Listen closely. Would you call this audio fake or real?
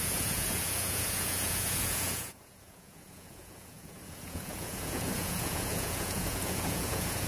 fake